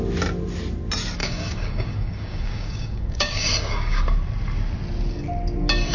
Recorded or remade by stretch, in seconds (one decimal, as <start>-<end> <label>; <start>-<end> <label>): 0.0-1.2 recorded; 1.2-4.0 remade; 4.0-5.9 recorded